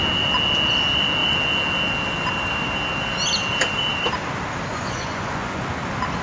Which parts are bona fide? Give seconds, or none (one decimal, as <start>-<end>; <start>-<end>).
0.0-4.7; 5.6-6.2